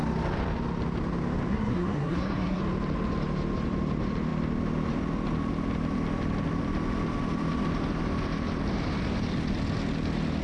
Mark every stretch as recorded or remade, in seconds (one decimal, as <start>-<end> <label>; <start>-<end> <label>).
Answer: 0.0-1.5 recorded; 1.5-2.6 remade; 2.6-10.4 recorded